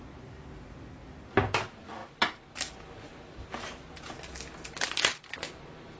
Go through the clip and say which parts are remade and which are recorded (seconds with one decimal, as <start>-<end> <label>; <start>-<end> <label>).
0.0-6.0 recorded